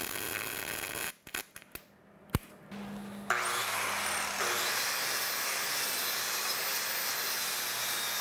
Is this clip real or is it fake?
real